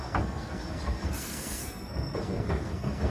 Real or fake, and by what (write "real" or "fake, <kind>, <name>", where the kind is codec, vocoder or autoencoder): fake, codec, SNAC